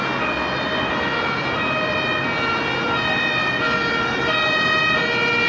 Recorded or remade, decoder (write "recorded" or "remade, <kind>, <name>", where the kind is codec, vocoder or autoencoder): recorded